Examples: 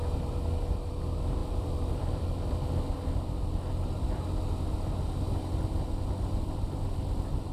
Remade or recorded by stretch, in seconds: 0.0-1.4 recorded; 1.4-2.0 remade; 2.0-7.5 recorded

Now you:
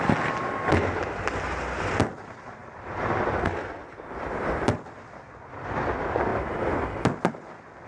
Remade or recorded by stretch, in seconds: 0.0-2.6 recorded; 2.6-4.3 remade; 4.3-7.9 recorded

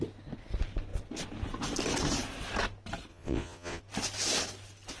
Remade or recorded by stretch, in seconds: 0.0-3.1 recorded; 3.1-3.8 remade; 3.8-5.0 recorded

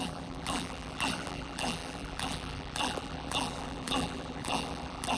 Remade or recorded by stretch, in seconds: 0.0-5.2 remade

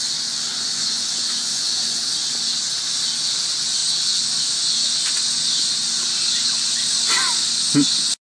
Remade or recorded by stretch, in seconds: 0.0-0.5 recorded; 0.5-2.0 remade; 2.0-8.3 recorded

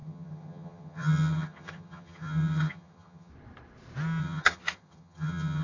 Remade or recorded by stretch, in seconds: 0.0-3.3 remade; 3.3-4.2 recorded; 4.2-5.6 remade